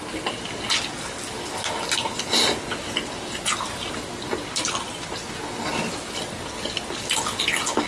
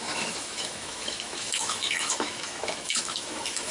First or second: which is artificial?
second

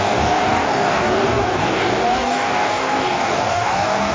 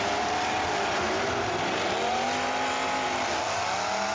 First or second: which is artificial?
first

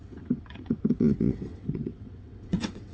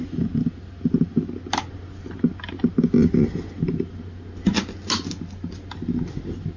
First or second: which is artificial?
first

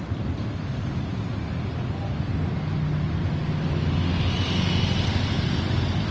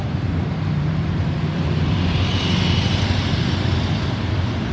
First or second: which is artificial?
second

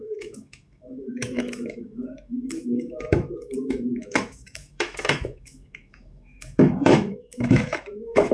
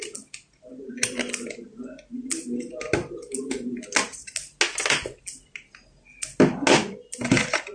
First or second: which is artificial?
first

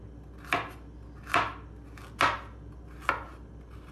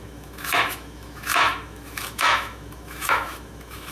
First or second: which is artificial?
second